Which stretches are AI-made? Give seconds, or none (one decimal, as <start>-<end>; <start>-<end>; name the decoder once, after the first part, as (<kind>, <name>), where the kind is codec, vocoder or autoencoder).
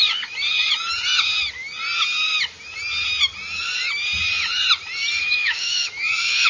5.2-6.5 (autoencoder, DAC-VAE)